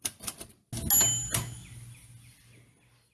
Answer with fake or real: real